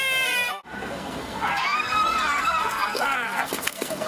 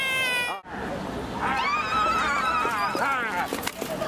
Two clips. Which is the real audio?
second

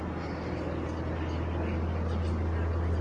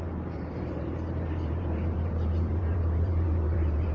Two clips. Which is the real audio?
first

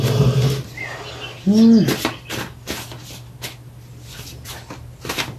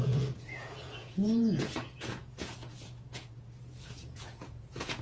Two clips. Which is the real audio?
first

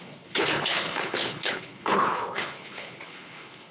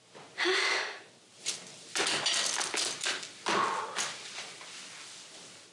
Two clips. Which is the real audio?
second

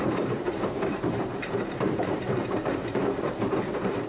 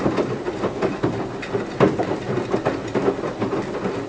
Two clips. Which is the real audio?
second